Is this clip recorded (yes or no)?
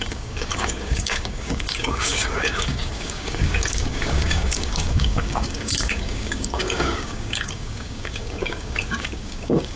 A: no